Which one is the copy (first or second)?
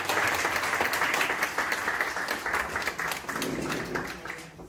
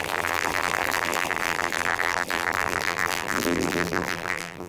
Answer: second